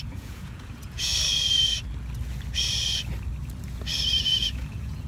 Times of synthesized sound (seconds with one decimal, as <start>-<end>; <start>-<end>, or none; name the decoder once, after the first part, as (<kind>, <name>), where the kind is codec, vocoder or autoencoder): 0.0-1.1 (vocoder, Vocos); 4.2-5.1